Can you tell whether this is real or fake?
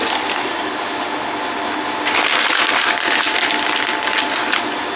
real